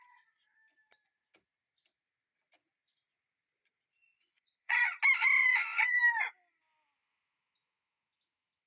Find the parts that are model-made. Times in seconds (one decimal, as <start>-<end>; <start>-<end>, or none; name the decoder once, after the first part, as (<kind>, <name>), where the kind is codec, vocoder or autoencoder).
4.1-5.0 (vocoder, Vocos); 5.5-6.0